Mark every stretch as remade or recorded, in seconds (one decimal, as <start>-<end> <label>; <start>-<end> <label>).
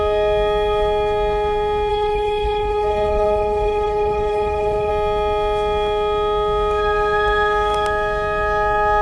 0.0-1.9 recorded; 1.9-4.9 remade; 4.9-9.0 recorded